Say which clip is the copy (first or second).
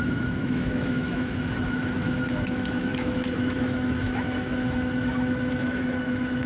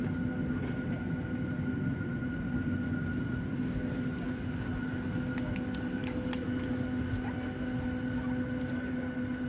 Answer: first